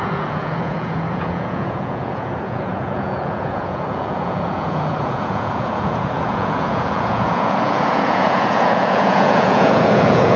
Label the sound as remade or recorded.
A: remade